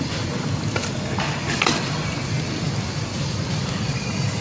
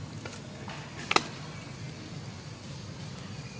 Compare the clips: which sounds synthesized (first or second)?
first